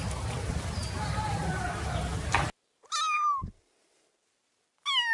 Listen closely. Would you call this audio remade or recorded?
recorded